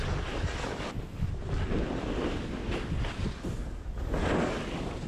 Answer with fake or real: real